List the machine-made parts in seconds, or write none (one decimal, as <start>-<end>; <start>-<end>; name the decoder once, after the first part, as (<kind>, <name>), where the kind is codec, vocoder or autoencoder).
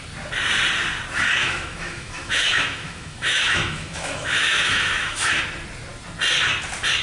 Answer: 1.4-5.4 (autoencoder, DAC-VAE)